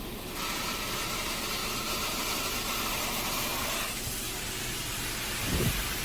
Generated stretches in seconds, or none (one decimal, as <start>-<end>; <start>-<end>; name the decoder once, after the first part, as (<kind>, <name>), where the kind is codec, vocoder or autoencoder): 1.6-3.0 (vocoder, BigVGAN v2)